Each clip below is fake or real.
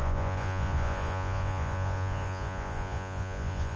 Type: fake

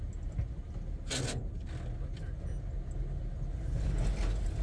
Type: real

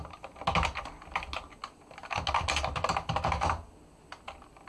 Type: real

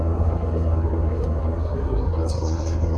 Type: fake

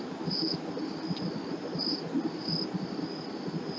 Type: real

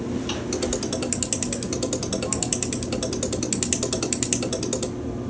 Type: real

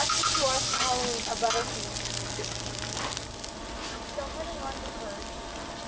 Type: real